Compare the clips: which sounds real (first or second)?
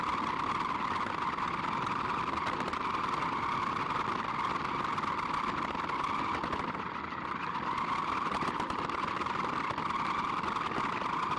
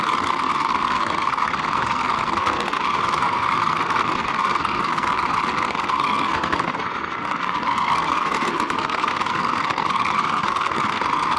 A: first